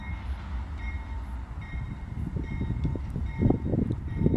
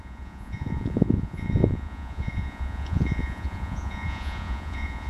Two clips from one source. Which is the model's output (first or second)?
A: second